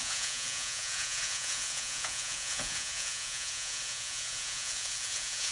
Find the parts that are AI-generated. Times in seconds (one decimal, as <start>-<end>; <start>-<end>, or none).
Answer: 0.0-5.5